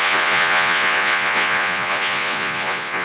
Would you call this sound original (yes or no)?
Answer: no